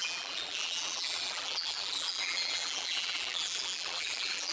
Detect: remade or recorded remade